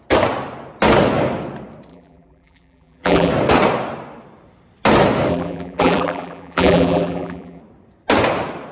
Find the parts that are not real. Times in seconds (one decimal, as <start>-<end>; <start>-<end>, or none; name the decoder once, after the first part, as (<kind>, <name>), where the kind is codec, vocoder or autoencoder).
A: 1.9-3.3 (vocoder, BigVGAN v2); 5.3-7.6